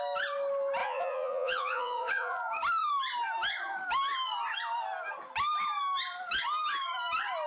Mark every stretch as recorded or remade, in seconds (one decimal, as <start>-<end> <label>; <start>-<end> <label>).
0.0-0.8 recorded; 0.8-2.5 remade; 2.5-7.5 recorded